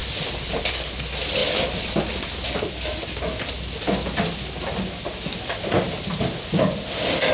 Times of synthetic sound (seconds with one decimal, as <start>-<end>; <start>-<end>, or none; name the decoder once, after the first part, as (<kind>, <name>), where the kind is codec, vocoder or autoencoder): none